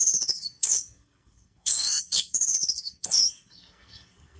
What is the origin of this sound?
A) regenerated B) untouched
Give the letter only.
A